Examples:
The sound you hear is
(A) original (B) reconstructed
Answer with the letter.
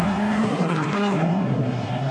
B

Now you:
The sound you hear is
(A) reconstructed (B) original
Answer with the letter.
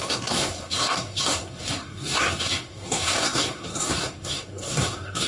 A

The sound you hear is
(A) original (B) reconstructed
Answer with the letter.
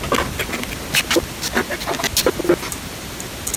A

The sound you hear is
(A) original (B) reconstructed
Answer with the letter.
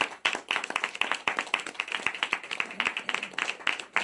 A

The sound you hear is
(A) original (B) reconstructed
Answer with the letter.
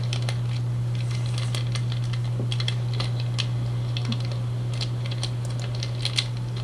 A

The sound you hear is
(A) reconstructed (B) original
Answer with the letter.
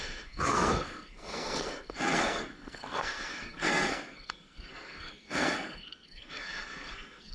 A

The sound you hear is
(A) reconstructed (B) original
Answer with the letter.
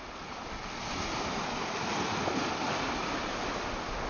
B